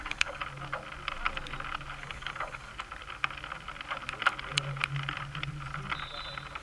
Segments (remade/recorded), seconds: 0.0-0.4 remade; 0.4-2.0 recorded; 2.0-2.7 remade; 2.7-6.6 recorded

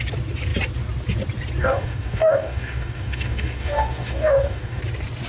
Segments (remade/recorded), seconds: 0.0-1.6 recorded; 1.6-4.8 remade; 4.8-5.3 recorded

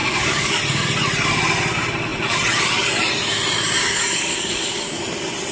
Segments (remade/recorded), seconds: 0.0-0.6 remade; 0.6-3.8 recorded; 3.8-5.0 remade; 5.0-5.5 recorded

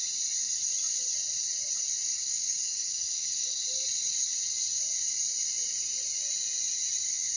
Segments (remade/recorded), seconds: 0.0-2.2 recorded; 2.2-3.6 remade; 3.6-7.4 recorded

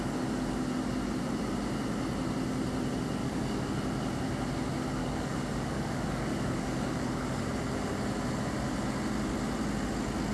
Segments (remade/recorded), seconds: 0.0-3.2 recorded; 3.2-3.7 remade; 3.7-5.0 recorded; 5.0-7.4 remade; 7.4-10.3 recorded